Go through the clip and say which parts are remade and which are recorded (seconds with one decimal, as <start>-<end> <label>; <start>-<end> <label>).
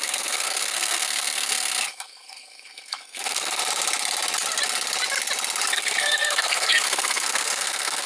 0.0-3.6 remade; 3.6-5.7 recorded; 5.7-8.1 remade